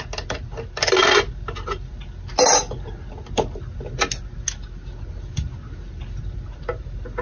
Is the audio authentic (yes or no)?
yes